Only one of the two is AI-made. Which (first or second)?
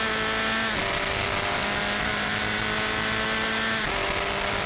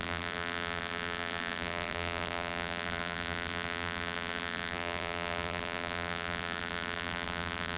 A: second